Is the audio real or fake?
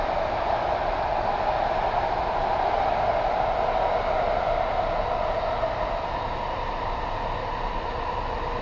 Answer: real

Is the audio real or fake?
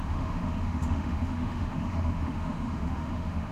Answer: fake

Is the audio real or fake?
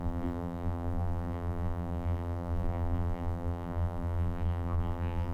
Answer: fake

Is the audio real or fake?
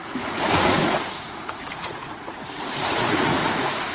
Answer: fake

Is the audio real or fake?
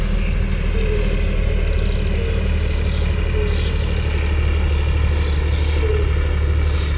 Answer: real